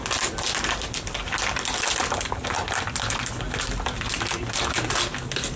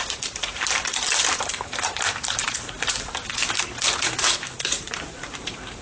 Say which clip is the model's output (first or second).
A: second